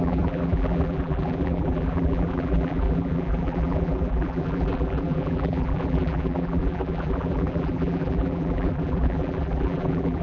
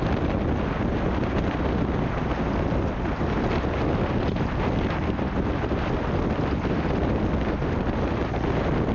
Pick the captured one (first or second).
second